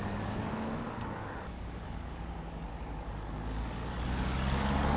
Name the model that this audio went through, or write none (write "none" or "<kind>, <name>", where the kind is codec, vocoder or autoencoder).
codec, DAC